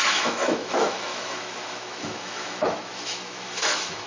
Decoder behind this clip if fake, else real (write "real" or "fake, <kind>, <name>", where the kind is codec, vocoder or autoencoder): fake, autoencoder, DAC-VAE